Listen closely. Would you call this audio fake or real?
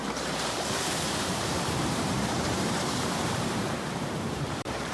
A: fake